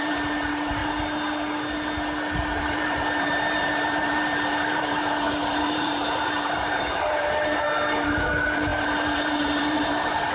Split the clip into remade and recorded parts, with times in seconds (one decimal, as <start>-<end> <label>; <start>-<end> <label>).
0.0-0.8 remade; 0.8-2.6 recorded; 2.6-10.3 remade